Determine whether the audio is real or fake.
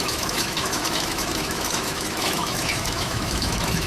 fake